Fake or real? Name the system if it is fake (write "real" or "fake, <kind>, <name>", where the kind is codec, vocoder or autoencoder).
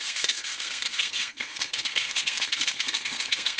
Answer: fake, codec, SNAC